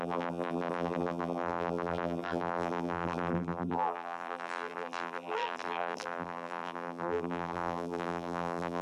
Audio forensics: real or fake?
fake